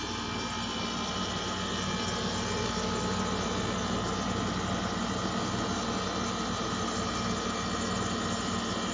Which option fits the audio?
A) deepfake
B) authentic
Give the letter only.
B